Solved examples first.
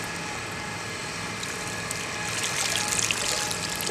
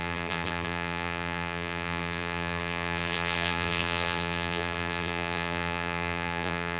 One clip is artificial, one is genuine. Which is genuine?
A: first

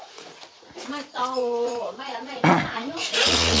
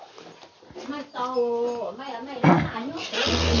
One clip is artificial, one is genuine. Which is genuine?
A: second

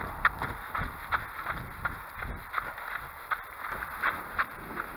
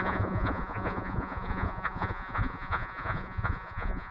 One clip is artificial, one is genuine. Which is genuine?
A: first